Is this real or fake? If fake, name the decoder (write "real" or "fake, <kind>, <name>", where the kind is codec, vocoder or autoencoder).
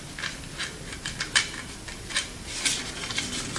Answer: real